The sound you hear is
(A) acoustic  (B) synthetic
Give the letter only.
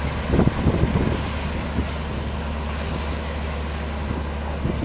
A